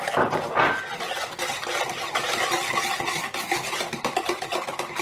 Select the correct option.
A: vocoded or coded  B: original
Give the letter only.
B